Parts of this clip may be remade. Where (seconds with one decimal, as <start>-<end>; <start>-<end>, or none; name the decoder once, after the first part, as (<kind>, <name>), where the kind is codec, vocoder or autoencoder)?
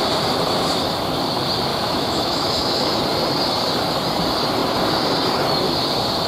1.7-3.0 (autoencoder, DAC-VAE)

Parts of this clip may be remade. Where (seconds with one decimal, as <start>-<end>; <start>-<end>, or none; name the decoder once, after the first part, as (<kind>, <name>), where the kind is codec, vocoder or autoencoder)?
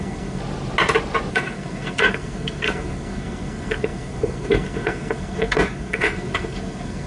0.0-0.4 (codec, SNAC); 1.3-7.1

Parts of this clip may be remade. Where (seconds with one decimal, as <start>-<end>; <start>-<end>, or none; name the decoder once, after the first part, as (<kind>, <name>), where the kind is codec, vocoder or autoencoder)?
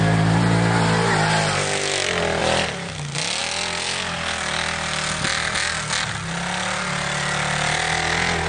none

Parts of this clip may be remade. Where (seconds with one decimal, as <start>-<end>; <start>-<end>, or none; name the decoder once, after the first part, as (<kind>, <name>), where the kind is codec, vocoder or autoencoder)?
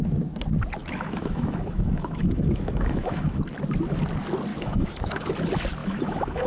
0.8-3.4 (autoencoder, DAC-VAE); 4.5-5.3; 5.8-6.5